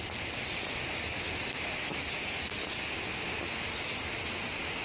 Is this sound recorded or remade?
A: recorded